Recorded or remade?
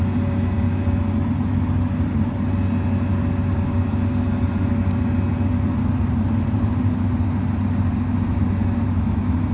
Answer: recorded